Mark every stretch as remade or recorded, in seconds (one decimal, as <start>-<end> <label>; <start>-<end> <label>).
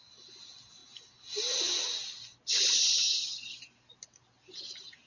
0.0-5.1 recorded